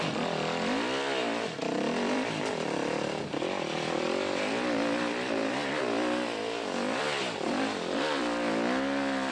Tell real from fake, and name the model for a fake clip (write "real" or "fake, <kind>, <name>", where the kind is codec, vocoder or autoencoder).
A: fake, vocoder, BigVGAN v2